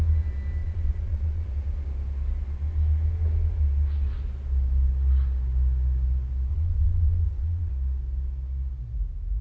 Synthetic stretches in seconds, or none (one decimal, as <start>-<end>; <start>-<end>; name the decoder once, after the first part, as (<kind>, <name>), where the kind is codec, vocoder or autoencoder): 0.6-1.5 (vocoder, Vocos); 6.5-7.7